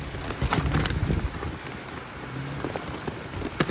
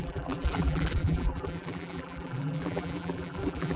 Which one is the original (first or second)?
first